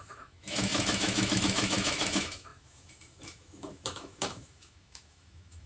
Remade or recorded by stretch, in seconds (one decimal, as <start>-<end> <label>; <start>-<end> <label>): 0.0-5.7 remade